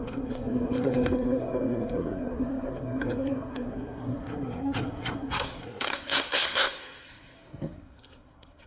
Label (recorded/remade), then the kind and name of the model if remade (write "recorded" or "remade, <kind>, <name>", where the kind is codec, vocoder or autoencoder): remade, codec, SNAC